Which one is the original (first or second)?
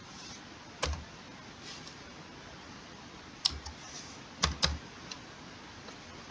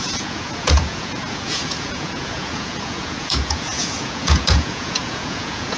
first